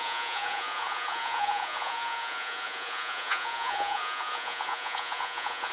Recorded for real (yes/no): no